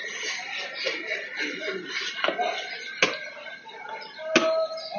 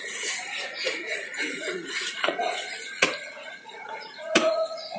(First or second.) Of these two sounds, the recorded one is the first